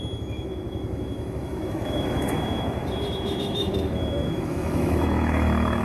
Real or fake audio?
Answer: fake